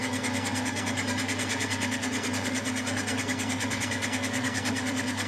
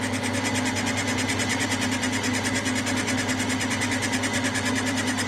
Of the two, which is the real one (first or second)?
second